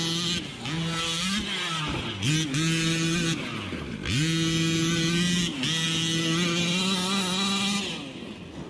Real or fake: real